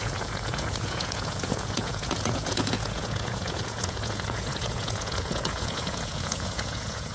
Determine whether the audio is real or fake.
fake